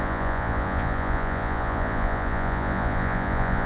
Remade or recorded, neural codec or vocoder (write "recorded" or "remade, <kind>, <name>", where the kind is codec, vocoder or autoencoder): remade, vocoder, Vocos